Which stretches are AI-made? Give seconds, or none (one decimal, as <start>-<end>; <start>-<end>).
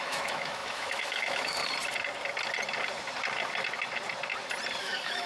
0.0-1.6; 4.8-5.3